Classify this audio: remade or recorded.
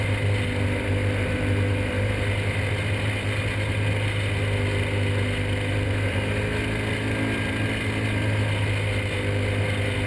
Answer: recorded